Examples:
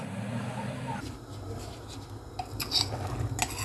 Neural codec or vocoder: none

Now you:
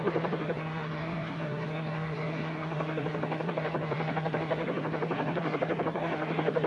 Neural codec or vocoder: codec, SNAC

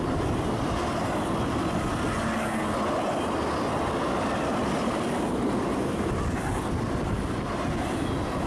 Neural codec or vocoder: none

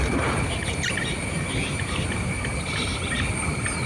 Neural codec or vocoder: none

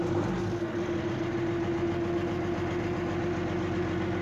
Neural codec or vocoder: none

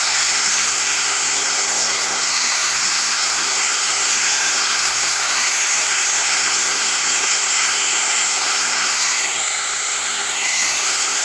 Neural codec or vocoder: codec, SNAC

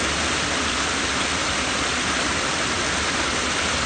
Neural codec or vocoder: none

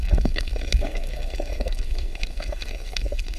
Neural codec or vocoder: codec, SNAC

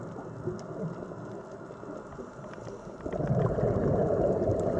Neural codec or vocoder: none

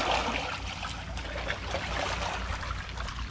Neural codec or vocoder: none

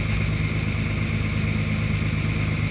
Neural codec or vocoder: none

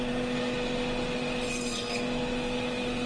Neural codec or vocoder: none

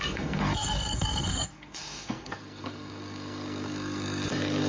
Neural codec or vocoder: codec, SNAC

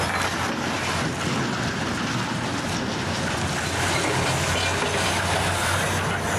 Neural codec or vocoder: none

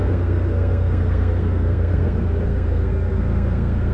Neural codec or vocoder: codec, SNAC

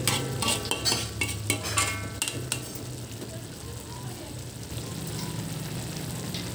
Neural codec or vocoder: none